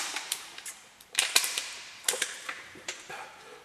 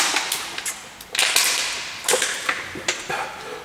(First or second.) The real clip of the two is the second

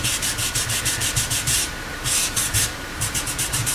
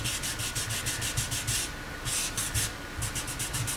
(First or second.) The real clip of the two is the second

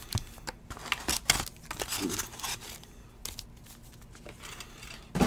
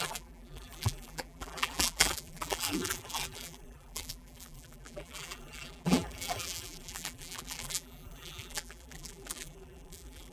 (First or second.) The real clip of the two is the first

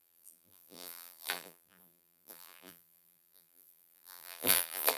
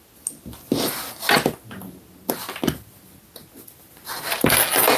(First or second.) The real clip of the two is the second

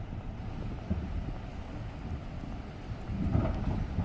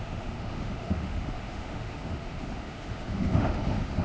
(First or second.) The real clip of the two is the first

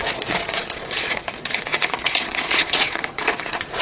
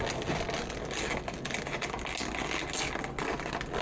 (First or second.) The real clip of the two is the second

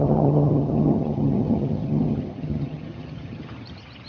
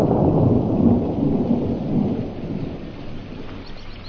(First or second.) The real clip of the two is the second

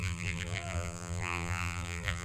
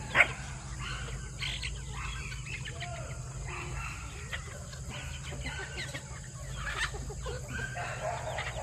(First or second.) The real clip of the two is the second